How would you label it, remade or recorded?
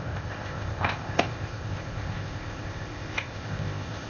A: remade